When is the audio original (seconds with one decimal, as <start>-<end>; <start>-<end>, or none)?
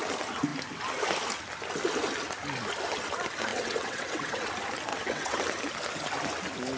0.0-3.5; 4.5-4.9; 5.4-6.8